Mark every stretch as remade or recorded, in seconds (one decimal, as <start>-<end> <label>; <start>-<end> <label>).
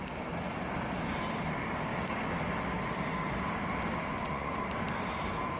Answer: 0.0-4.1 recorded; 4.1-4.6 remade; 4.6-5.6 recorded